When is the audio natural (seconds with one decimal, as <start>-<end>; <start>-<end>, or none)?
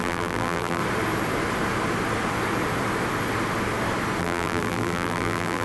0.8-4.2